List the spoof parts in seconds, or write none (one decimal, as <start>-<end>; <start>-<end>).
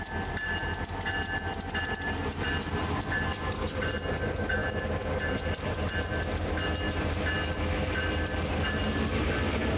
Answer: none